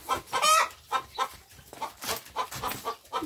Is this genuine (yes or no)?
yes